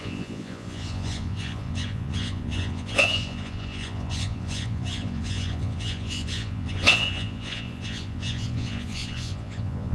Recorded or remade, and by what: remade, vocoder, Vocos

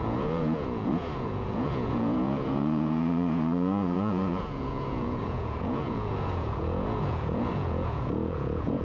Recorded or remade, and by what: remade, vocoder, Vocos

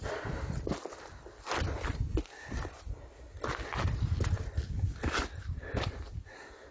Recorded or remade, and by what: recorded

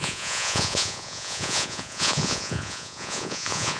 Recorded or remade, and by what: remade, vocoder, Vocos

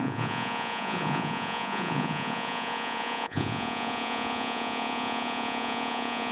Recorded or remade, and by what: remade, vocoder, Vocos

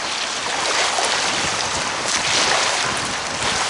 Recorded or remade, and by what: recorded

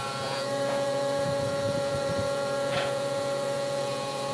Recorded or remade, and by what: remade, vocoder, Vocos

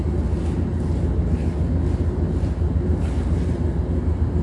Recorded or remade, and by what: recorded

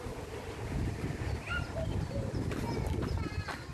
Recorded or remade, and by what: recorded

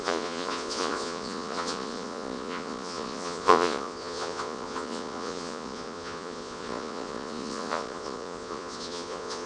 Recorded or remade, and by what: remade, vocoder, Vocos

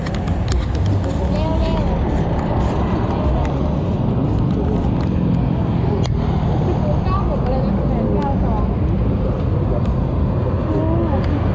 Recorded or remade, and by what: recorded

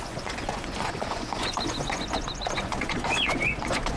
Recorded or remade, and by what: remade, vocoder, Vocos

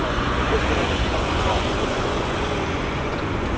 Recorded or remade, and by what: remade, vocoder, Vocos